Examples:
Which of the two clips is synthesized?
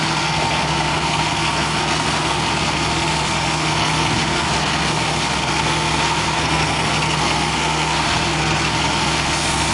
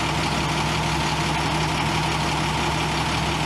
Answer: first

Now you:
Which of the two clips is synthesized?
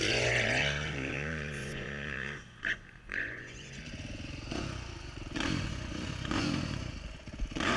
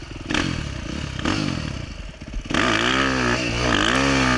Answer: first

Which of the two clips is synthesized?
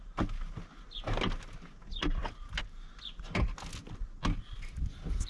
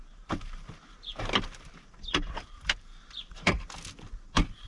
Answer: second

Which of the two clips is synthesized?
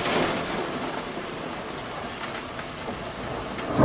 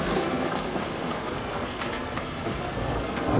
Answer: second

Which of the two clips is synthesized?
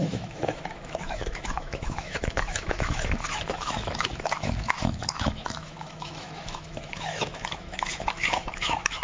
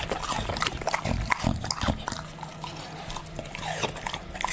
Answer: first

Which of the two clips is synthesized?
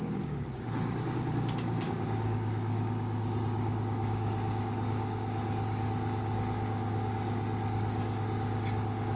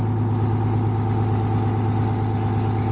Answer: first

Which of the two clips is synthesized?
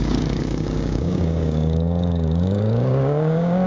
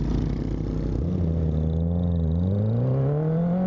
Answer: first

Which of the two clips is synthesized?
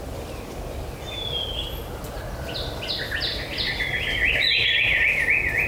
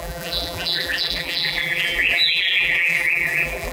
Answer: second